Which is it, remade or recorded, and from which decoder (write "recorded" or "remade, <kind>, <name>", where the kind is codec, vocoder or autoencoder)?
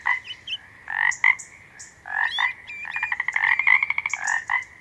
recorded